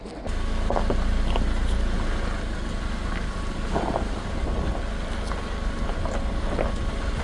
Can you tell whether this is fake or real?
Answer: real